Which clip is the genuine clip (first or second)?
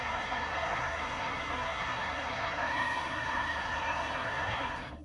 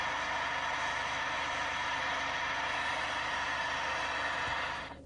second